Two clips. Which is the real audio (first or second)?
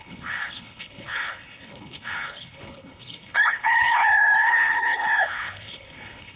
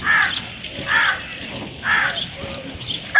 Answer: second